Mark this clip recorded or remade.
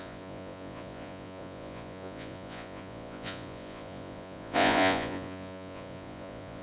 remade